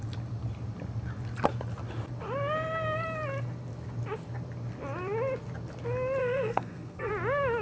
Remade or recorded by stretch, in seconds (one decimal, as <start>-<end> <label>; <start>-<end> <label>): 0.0-6.2 recorded; 6.2-7.1 remade; 7.1-7.6 recorded